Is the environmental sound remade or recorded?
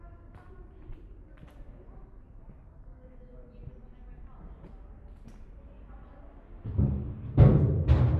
recorded